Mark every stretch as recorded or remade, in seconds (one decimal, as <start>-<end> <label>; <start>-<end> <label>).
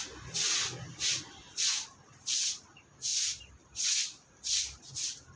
0.0-5.4 recorded